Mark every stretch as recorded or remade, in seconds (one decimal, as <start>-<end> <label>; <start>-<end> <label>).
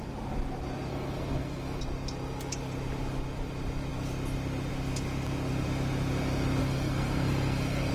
0.0-0.9 recorded; 0.9-1.8 remade; 1.8-6.6 recorded; 6.6-7.9 remade